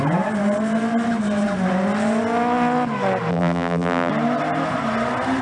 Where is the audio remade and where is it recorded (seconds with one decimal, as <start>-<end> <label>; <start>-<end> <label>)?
0.0-3.3 recorded; 3.3-4.1 remade; 4.1-5.4 recorded